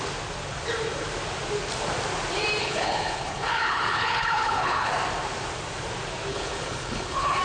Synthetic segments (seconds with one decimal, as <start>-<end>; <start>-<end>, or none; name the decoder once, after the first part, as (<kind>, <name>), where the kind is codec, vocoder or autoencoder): 2.6-4.9 (codec, HILCodec); 6.3-7.4